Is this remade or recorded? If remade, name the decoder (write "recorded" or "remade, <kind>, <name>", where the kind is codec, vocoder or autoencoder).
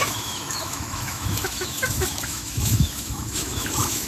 remade, autoencoder, DAC-VAE